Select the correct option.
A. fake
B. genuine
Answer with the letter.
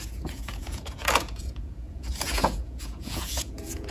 A